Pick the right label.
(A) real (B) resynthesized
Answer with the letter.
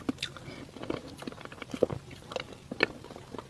A